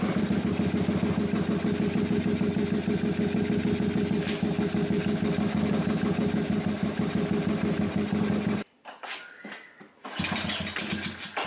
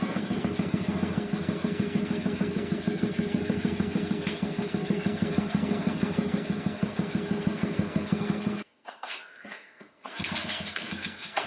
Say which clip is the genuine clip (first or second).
first